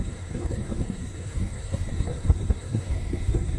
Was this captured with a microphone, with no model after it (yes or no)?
no